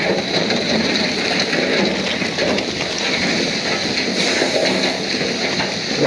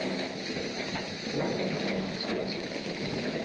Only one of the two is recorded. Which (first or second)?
first